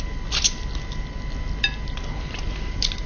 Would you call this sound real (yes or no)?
yes